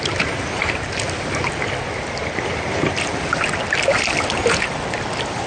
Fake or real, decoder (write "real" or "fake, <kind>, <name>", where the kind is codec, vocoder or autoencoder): real